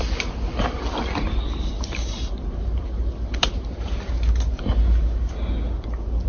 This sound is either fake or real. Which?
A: real